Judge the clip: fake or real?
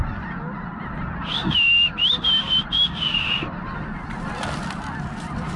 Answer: real